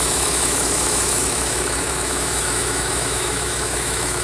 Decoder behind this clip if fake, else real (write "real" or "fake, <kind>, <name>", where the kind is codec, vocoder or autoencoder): fake, autoencoder, DAC-VAE